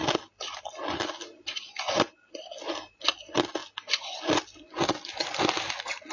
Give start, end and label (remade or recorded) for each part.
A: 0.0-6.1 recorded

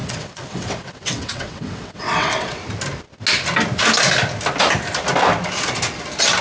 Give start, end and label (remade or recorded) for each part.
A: 0.0-2.6 remade; 2.6-6.4 recorded

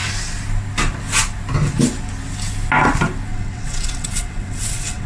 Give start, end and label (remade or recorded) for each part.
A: 0.0-3.3 recorded; 3.3-5.1 remade

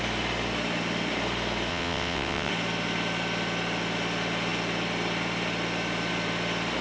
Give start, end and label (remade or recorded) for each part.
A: 0.0-1.7 recorded; 1.7-2.5 remade; 2.5-6.8 recorded

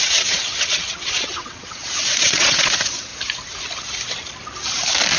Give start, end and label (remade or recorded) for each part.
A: 0.0-3.1 remade; 3.1-5.2 recorded

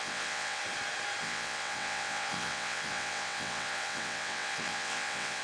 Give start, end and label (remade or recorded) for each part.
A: 0.0-0.6 remade; 0.6-1.2 recorded; 1.2-5.4 remade

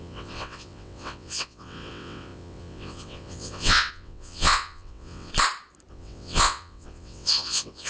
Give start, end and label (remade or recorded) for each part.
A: 0.0-5.3 remade; 5.3-5.9 recorded; 5.9-7.9 remade